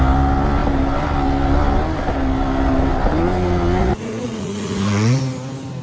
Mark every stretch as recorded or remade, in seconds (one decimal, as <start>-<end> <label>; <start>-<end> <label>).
0.0-3.8 recorded; 3.8-5.2 remade; 5.2-5.8 recorded